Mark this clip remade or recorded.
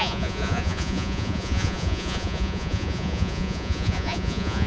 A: remade